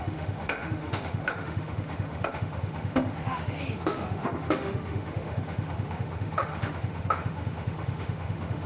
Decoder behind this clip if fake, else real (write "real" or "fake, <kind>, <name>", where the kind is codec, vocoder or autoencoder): fake, autoencoder, DAC-VAE